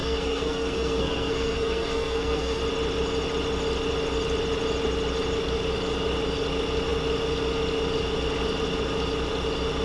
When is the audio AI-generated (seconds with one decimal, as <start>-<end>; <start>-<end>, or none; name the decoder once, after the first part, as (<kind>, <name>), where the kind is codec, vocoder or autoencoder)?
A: 0.0-2.6 (codec, SNAC)